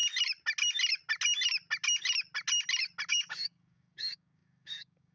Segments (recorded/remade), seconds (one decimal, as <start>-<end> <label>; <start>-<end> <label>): 0.0-3.1 recorded; 3.1-5.1 remade